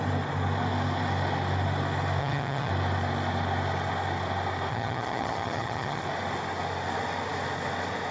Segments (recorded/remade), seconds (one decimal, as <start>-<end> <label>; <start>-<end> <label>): 0.0-2.2 recorded; 2.2-2.7 remade; 2.7-4.7 recorded; 4.7-6.0 remade; 6.0-8.1 recorded